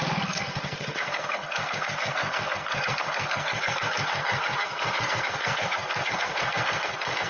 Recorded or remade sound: remade